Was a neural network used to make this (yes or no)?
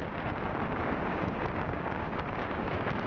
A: yes